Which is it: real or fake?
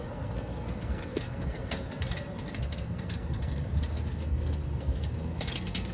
fake